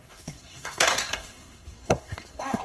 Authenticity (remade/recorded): remade